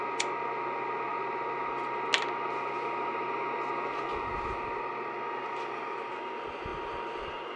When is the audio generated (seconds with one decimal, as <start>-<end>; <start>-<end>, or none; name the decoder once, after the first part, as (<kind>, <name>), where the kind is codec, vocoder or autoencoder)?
none